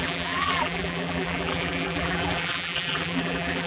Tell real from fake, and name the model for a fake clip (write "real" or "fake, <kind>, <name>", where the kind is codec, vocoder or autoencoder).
fake, vocoder, BigVGAN v2